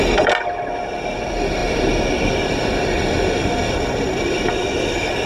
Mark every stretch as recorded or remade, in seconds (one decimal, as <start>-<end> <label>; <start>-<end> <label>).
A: 0.0-5.3 recorded